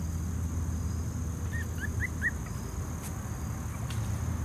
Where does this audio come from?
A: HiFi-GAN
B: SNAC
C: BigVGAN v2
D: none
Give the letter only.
D